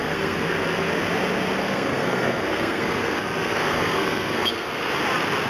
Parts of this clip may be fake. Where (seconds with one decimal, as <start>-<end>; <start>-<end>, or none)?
0.0-0.9; 1.6-4.9